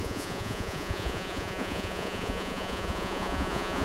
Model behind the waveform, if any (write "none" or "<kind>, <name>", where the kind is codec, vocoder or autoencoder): vocoder, Vocos